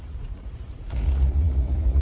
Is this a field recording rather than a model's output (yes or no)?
no